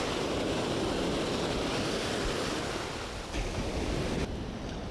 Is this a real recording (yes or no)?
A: yes